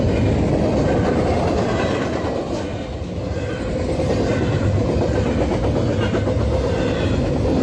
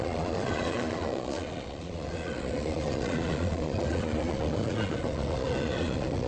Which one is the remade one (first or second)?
second